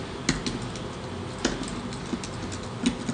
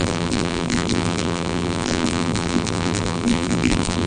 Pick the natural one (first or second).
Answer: first